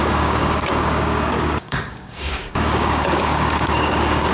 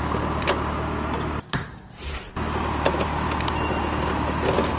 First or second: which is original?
second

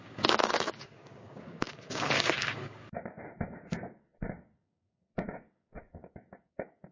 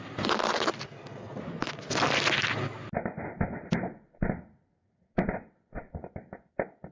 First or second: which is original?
second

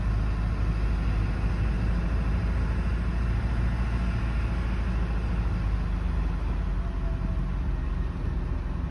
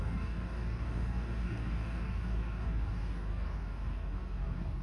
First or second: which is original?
first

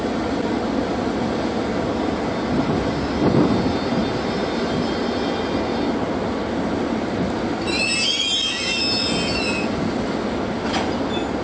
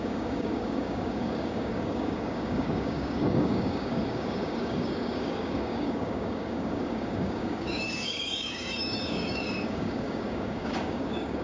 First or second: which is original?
first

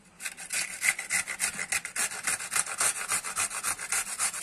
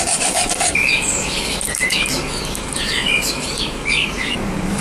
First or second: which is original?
first